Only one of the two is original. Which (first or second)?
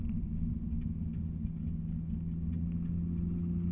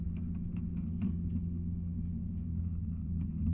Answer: first